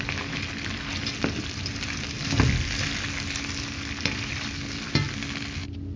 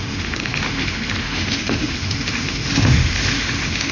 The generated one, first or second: second